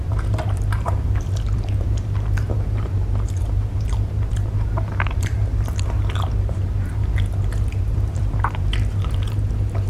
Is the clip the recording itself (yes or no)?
no